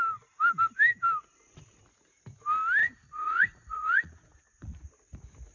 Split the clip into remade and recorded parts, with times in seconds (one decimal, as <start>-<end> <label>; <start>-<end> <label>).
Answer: 0.0-2.8 recorded; 2.8-4.9 remade; 4.9-5.5 recorded